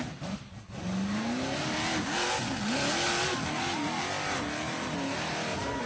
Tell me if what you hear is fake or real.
real